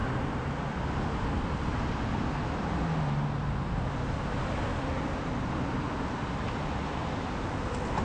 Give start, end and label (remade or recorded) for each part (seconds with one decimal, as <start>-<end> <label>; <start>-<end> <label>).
0.0-8.0 recorded